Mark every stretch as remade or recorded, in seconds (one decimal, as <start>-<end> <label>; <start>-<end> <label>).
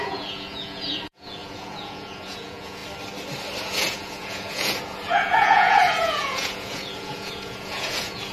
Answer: 0.0-2.8 remade; 2.8-3.6 recorded; 3.6-8.3 remade